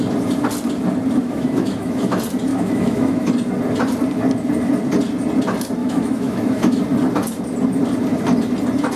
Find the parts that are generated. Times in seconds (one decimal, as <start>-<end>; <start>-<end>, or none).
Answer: 1.2-2.1; 2.5-3.3; 5.8-6.8